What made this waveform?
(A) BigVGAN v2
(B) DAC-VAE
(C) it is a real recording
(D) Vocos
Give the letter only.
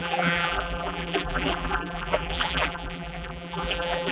A